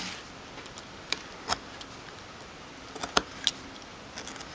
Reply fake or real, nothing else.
real